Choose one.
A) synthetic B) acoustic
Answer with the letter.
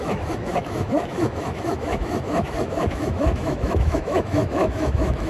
A